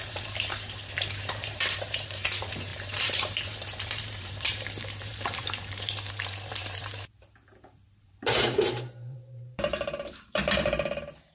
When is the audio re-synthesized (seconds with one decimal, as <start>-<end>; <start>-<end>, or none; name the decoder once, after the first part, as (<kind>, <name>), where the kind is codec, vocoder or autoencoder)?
0.0-11.3 (vocoder, BigVGAN v2)